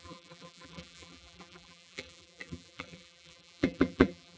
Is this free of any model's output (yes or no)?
no